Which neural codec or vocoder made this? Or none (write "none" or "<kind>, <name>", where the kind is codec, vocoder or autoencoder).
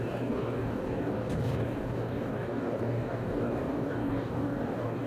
codec, DAC